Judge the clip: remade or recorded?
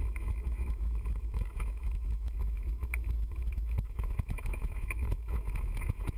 remade